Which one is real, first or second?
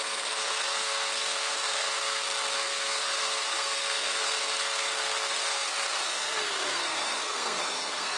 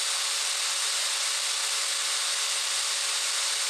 second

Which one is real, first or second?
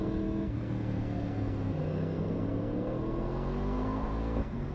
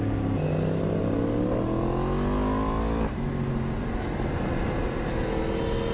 second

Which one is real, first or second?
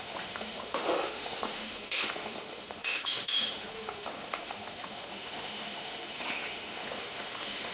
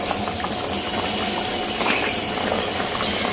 second